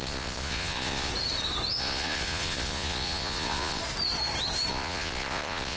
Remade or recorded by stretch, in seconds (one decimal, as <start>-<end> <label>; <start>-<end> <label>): 0.0-1.1 remade; 1.1-1.8 recorded; 1.8-3.8 remade; 3.8-4.7 recorded; 4.7-5.8 remade